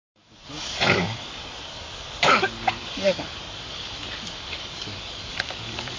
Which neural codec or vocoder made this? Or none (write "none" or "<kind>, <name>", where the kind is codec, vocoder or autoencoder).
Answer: codec, DAC